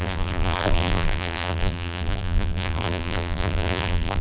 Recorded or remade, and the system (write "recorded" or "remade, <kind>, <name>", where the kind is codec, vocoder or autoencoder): remade, vocoder, BigVGAN v2